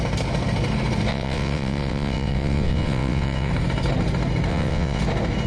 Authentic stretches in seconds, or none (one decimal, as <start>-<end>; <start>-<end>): 0.0-1.1; 3.5-4.5; 5.0-5.5